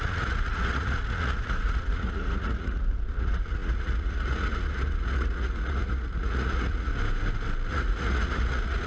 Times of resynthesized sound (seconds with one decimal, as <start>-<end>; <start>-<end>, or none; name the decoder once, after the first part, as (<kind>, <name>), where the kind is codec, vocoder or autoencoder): 0.0-6.9 (vocoder, Vocos); 7.7-8.9